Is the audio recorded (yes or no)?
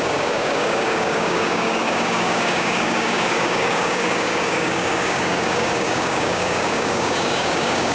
no